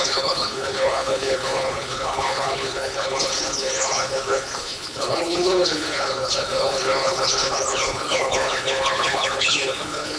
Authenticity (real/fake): fake